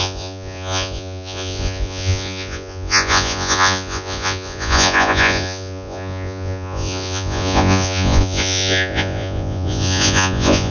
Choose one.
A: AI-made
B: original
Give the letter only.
A